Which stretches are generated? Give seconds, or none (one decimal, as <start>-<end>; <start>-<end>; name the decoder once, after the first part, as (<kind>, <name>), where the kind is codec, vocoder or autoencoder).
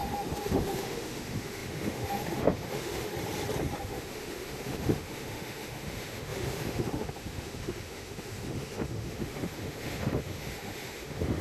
0.0-3.1 (autoencoder, DAC-VAE); 3.8-11.4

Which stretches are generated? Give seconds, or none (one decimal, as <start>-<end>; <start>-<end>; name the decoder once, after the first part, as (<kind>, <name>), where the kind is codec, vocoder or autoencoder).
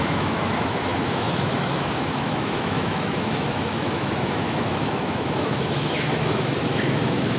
0.0-7.4 (autoencoder, DAC-VAE)